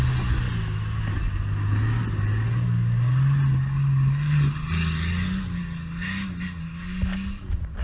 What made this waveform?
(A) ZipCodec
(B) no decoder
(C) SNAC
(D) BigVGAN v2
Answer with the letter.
B